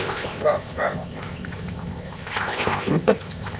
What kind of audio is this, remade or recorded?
remade